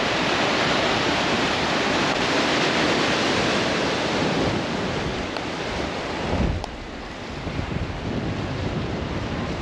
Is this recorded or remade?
remade